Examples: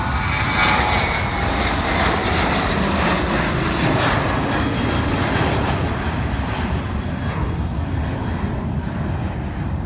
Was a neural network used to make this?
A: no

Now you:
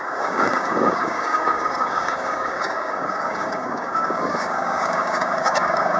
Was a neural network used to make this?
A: yes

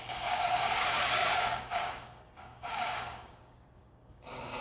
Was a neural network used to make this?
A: yes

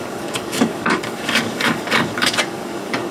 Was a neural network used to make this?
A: yes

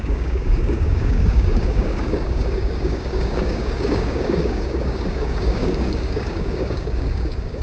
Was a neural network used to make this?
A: yes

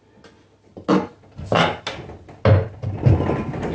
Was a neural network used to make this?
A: no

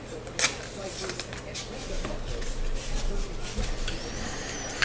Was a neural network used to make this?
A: no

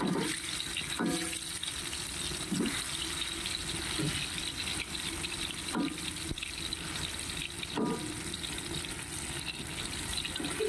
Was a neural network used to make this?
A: no